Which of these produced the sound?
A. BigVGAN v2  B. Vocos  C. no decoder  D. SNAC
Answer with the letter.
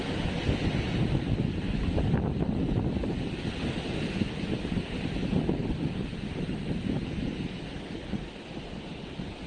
C